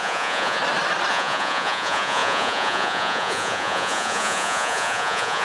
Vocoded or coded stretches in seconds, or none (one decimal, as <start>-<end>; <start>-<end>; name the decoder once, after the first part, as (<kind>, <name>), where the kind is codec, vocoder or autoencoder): 0.0-0.6 (vocoder, Vocos); 1.1-5.4